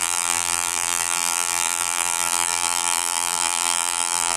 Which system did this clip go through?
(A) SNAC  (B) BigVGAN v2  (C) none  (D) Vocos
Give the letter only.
B